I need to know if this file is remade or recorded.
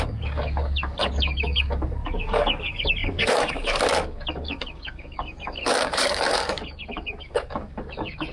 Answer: remade